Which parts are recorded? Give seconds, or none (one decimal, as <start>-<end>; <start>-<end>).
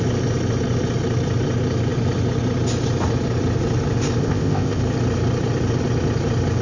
0.0-4.2; 4.8-6.6